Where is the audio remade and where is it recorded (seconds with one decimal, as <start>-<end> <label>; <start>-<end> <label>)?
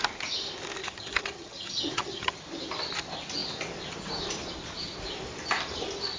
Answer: 0.0-0.8 recorded; 0.8-2.4 remade; 2.4-6.2 recorded